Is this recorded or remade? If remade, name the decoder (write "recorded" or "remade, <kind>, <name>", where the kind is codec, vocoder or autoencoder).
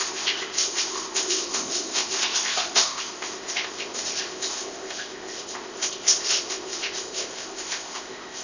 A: remade, codec, ZipCodec